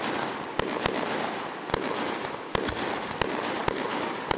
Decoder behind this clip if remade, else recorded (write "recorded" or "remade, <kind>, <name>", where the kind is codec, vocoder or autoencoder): recorded